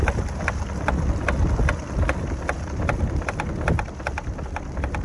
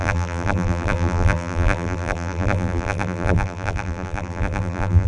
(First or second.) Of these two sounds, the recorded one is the first